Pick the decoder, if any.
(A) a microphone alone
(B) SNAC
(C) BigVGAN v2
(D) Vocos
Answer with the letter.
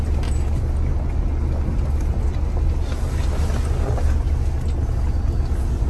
A